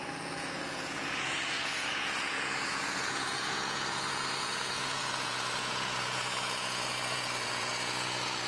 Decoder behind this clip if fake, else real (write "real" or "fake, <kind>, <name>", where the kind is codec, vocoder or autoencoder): fake, vocoder, Vocos